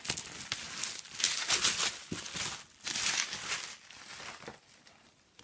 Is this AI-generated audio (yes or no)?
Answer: no